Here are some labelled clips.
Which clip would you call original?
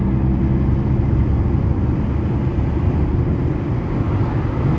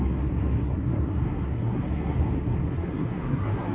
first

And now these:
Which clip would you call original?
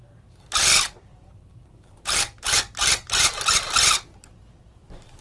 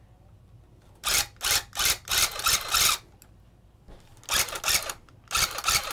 second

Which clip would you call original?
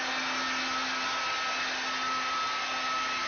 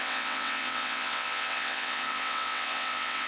first